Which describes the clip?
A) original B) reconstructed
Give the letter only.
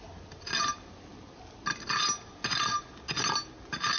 A